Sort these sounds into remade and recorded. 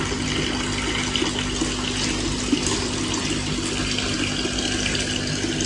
recorded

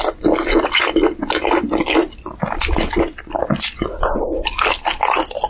recorded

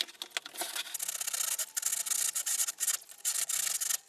recorded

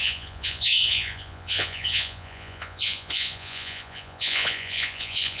remade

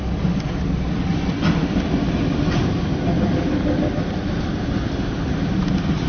recorded